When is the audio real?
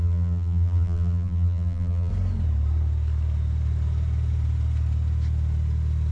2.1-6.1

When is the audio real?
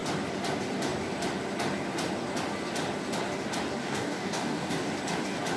0.0-3.8; 4.9-5.6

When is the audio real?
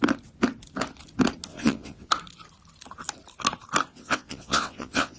0.0-1.5; 2.1-3.9